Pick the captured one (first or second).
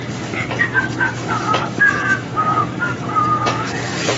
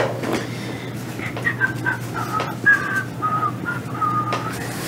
second